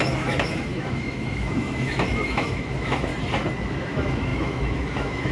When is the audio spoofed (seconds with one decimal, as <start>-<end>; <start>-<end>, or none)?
0.0-3.1; 3.6-5.3